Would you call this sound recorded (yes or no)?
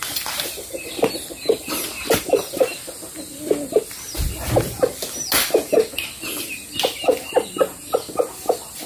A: yes